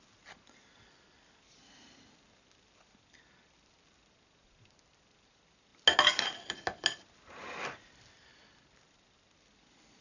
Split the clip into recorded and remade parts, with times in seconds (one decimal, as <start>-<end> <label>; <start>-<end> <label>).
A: 0.0-10.0 recorded